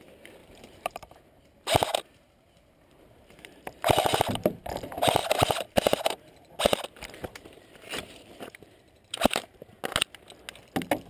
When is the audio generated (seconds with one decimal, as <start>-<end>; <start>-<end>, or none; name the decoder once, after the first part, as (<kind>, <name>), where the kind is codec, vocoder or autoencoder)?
0.4-1.4 (vocoder, BigVGAN v2); 1.9-4.6; 5.2-9.7